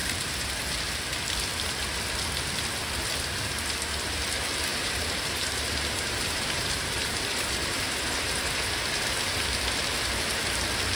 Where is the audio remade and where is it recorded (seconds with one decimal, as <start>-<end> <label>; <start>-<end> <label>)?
0.0-0.5 remade; 0.5-4.7 recorded; 4.7-8.6 remade; 8.6-11.0 recorded